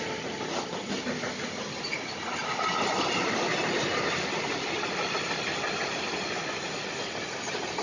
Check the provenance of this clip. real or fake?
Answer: real